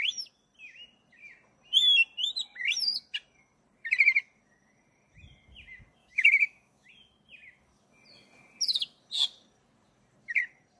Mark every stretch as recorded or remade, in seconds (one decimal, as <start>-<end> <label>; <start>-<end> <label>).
0.0-6.0 recorded; 6.0-6.9 remade; 6.9-10.8 recorded